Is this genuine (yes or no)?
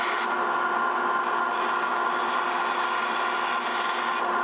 yes